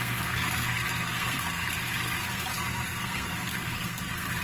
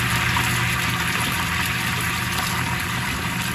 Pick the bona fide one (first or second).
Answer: second